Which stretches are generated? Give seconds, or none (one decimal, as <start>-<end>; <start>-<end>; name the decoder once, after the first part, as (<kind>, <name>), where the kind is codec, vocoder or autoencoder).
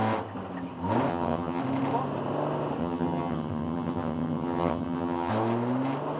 1.1-1.6 (vocoder, HiFi-GAN); 2.8-5.3